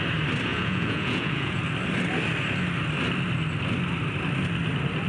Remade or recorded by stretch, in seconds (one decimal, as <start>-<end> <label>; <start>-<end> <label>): 0.0-0.5 recorded; 0.5-1.6 remade; 1.6-5.1 recorded